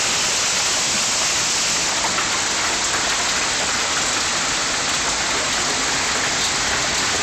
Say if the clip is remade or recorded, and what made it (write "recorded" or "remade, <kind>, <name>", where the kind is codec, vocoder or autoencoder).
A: recorded